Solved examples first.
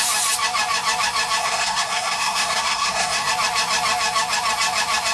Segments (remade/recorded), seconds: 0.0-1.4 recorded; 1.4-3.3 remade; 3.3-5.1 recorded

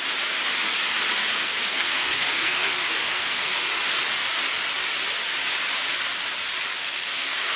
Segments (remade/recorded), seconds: 0.0-1.3 recorded; 1.3-3.7 remade; 3.7-6.8 recorded; 6.8-7.6 remade